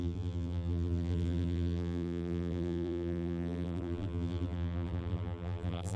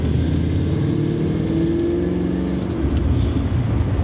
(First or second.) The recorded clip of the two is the second